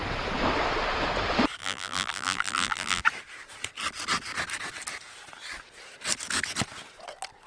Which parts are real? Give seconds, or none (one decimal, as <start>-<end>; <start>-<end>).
0.0-1.6; 3.0-7.5